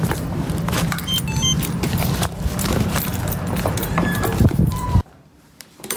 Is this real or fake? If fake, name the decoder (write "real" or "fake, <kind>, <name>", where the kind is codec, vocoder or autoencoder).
fake, vocoder, BigVGAN v2